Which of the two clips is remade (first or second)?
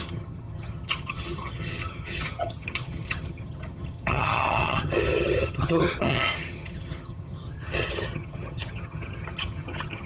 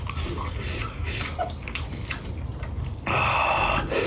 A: first